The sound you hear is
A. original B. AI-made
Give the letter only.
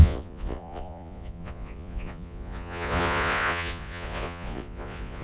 B